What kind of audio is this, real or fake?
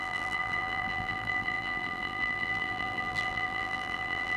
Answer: fake